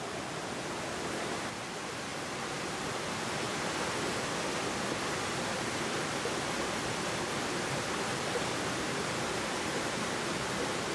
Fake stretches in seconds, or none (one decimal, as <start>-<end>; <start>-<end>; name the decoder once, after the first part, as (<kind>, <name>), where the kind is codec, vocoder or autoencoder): none